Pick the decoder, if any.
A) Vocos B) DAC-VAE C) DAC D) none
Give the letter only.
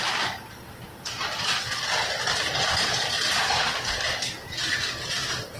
D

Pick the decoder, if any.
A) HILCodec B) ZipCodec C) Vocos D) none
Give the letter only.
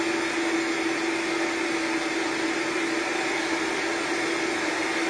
D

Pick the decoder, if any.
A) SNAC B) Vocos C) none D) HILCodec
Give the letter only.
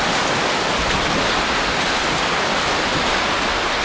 C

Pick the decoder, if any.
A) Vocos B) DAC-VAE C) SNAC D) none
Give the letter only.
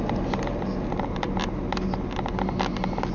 D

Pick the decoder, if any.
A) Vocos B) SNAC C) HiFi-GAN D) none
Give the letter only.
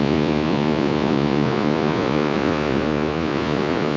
A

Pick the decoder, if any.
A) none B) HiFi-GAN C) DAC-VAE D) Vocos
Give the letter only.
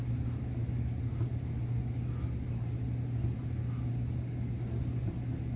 A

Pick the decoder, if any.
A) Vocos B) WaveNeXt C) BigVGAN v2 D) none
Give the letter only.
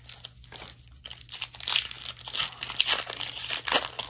D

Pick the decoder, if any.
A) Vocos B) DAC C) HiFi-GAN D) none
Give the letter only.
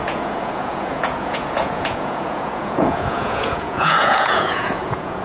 A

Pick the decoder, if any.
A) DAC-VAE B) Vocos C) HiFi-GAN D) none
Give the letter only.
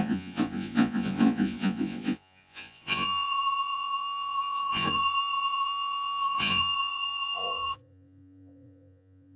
B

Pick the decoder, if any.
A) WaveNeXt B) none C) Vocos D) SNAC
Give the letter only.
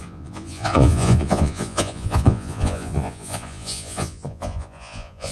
C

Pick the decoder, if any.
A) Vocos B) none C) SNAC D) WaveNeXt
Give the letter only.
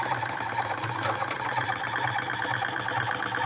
B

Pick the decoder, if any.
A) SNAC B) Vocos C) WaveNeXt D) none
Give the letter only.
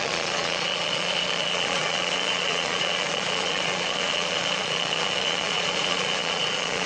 B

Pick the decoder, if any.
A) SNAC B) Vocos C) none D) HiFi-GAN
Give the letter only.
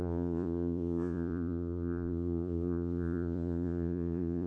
B